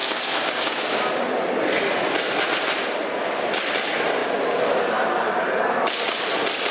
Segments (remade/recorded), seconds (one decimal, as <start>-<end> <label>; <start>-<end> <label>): 0.0-1.1 remade; 1.1-6.7 recorded